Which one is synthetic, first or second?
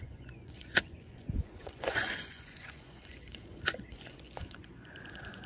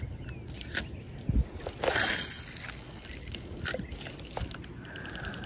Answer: first